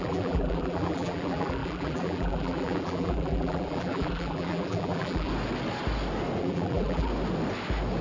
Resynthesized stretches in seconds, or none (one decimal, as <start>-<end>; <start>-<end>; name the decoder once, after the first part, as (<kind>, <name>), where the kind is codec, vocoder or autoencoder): 0.0-5.3 (vocoder, BigVGAN v2); 6.4-7.1